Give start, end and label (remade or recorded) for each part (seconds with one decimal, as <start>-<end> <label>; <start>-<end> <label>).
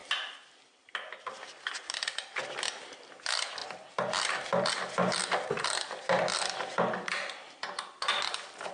0.0-8.7 recorded